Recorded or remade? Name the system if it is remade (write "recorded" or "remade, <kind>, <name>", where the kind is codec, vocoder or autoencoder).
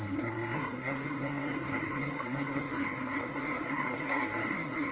remade, codec, SNAC